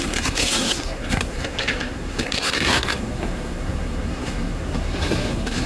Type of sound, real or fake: fake